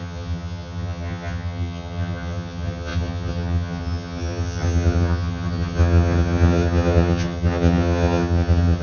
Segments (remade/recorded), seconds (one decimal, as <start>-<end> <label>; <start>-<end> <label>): 0.0-8.8 remade